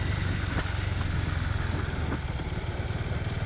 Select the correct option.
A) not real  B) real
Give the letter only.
B